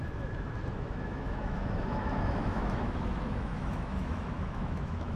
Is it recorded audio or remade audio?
remade